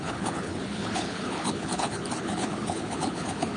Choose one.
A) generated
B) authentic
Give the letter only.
A